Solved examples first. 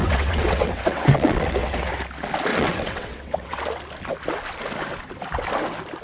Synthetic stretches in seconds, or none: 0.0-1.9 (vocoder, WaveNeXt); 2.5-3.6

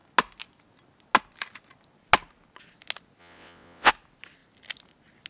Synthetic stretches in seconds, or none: 3.2-3.9 (vocoder, WaveNeXt)

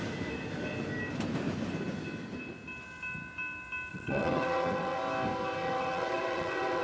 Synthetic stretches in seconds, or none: 3.9-5.0 (vocoder, WaveNeXt); 5.6-6.8

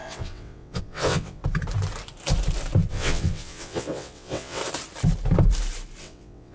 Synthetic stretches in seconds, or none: 0.0-1.4 (vocoder, WaveNeXt); 2.9-4.6; 6.0-6.5